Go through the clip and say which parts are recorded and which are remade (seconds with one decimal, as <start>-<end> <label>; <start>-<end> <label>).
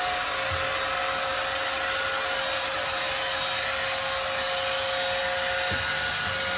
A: 0.0-6.6 recorded